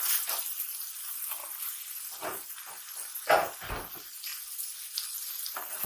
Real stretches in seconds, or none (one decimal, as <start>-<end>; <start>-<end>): 0.0-5.9